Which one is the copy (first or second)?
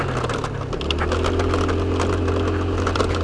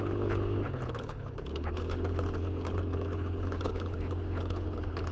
second